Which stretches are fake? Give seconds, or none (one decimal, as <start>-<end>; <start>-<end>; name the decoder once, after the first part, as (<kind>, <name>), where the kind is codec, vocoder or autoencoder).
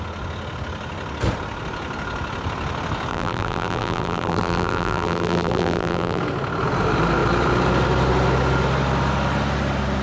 3.1-6.2 (vocoder, BigVGAN v2)